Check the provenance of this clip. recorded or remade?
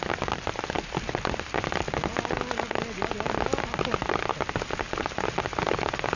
recorded